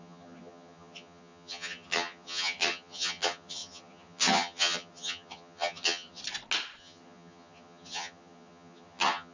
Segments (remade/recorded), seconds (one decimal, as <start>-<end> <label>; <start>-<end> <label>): 0.0-6.2 remade; 6.2-6.8 recorded; 6.8-9.3 remade